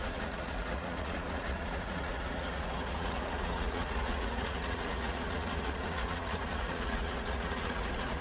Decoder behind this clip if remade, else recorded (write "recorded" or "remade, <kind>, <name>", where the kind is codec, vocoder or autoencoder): remade, vocoder, Vocos